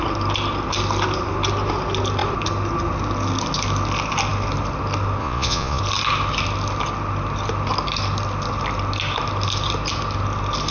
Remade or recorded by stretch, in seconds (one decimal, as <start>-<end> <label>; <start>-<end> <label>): 0.0-5.2 recorded; 5.2-5.8 remade; 5.8-10.7 recorded